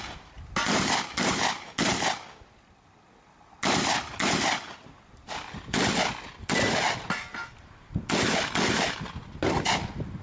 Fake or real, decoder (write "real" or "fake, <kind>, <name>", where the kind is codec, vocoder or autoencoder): real